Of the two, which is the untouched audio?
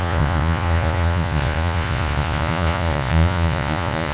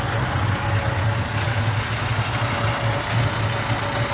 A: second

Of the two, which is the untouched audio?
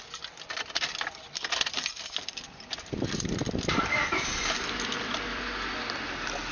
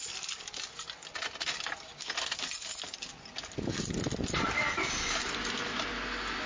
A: second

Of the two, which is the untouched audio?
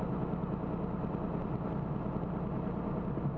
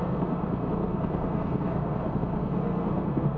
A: first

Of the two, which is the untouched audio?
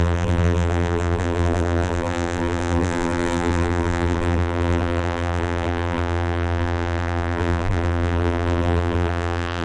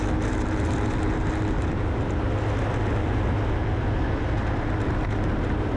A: second